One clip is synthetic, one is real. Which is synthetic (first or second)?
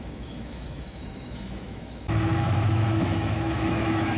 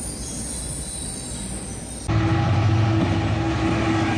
first